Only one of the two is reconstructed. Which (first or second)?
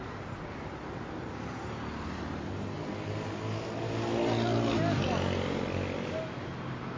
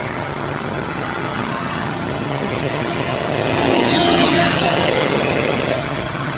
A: second